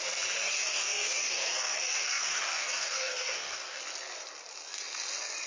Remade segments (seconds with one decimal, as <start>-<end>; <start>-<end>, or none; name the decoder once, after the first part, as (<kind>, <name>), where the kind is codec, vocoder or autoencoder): 0.5-3.8 (codec, DAC)